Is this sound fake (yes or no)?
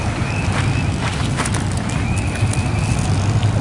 no